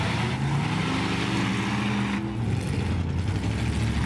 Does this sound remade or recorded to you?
recorded